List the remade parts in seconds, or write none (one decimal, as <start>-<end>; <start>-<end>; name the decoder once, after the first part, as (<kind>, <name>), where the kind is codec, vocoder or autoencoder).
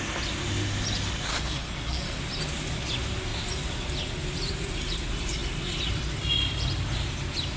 1.3-2.2 (codec, SNAC)